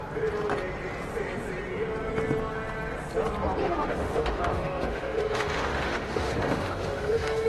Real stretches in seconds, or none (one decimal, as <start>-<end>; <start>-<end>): 0.0-3.6